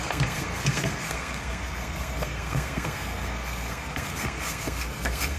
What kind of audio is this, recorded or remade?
remade